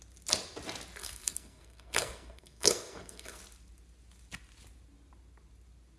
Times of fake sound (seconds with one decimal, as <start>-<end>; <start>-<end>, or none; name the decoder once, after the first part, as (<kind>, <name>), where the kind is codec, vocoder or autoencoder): 1.0-3.4 (codec, SNAC)